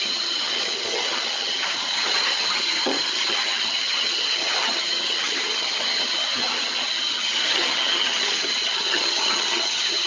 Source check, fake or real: fake